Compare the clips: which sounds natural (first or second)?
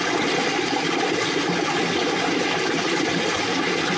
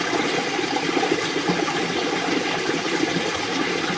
first